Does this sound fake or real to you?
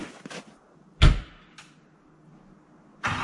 real